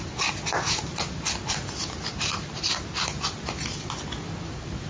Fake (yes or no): no